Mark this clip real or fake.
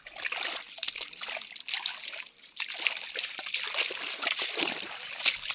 real